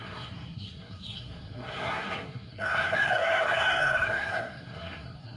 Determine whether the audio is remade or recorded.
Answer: remade